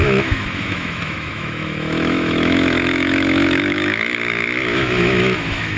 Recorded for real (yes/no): no